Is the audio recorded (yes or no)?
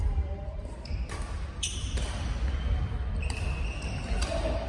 yes